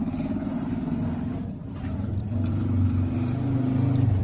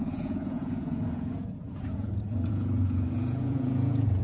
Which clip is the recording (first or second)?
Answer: first